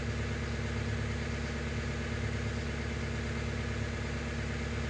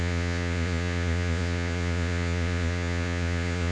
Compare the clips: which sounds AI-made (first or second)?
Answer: second